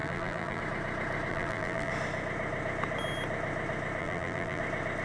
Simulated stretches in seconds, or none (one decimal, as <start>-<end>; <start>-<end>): 0.0-0.6; 1.3-1.9; 4.0-4.6